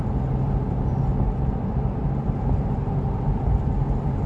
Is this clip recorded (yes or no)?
yes